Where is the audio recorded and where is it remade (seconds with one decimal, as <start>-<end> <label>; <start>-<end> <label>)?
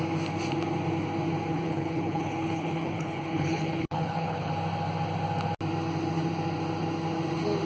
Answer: 0.0-1.5 recorded; 1.5-4.5 remade; 4.5-7.7 recorded